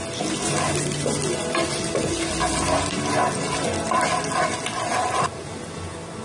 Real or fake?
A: real